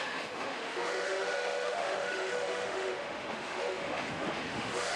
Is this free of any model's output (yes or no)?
no